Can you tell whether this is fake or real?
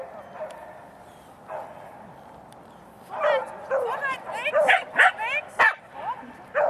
fake